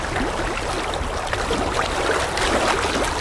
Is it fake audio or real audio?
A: real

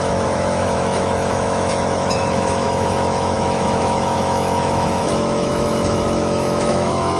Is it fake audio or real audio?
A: fake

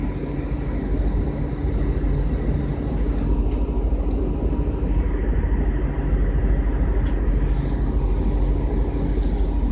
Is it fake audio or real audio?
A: real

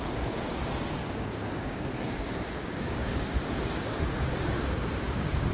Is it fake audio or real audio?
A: fake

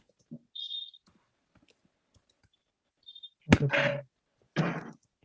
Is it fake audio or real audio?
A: real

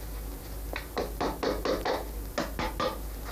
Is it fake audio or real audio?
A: real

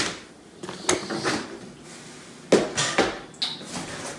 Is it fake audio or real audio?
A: real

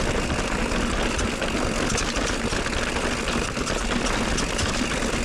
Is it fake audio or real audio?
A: real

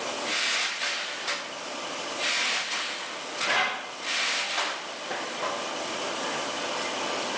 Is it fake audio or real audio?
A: fake